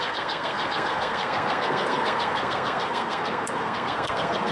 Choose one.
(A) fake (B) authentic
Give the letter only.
A